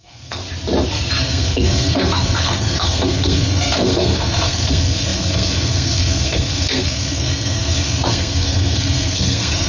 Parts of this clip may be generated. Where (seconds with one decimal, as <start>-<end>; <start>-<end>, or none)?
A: 0.0-0.4; 1.2-9.7